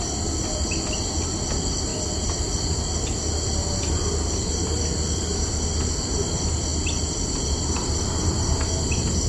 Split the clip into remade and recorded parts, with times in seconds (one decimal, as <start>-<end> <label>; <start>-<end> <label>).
0.0-6.7 recorded; 6.7-8.2 remade; 8.2-9.3 recorded